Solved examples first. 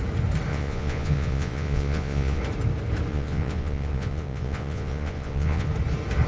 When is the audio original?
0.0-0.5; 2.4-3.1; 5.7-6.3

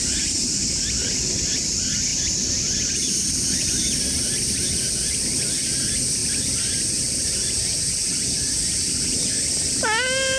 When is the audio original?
0.0-10.4

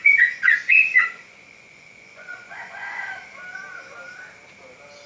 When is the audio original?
3.1-5.1

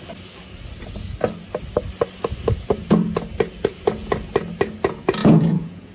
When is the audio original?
0.0-5.2

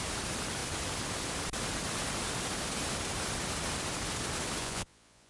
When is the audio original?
0.0-4.6

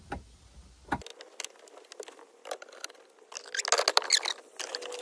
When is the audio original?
0.0-5.0

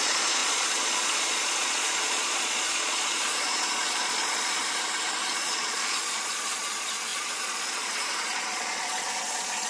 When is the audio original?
4.6-5.3

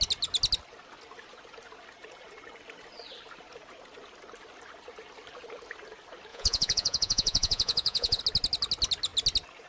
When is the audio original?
0.0-6.3; 8.2-9.7